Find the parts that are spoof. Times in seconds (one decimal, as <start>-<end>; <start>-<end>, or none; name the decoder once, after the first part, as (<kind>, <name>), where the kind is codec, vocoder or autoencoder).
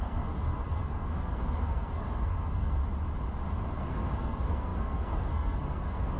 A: 0.0-2.8 (codec, SNAC); 3.8-6.2